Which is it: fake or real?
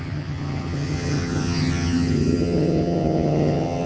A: fake